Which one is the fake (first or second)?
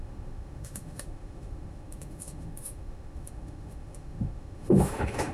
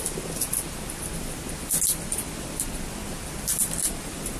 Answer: first